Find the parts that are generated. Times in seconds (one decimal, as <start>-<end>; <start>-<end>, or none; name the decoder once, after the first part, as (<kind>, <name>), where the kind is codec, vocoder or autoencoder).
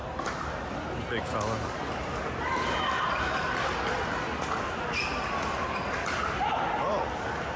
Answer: none